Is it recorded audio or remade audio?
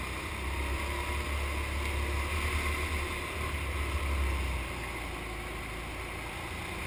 recorded